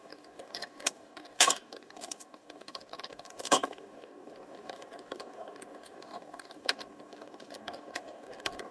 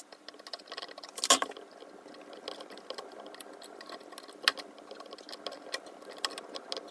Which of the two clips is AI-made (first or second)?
first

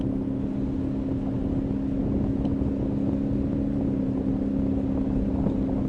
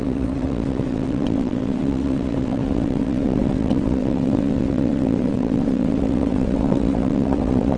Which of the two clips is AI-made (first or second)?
second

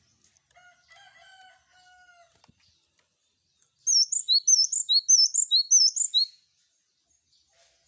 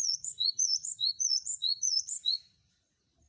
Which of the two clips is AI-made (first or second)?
second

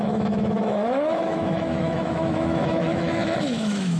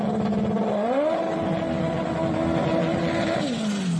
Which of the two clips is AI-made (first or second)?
first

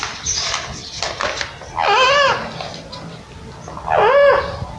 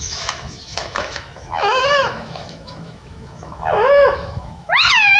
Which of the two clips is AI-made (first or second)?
second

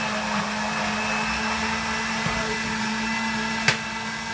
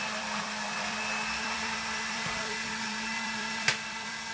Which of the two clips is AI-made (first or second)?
second